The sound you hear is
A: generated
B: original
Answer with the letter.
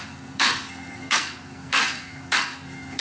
A